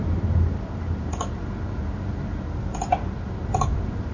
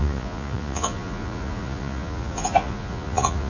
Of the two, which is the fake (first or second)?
second